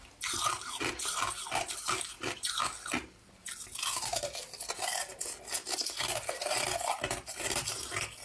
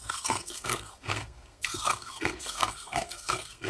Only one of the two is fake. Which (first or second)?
second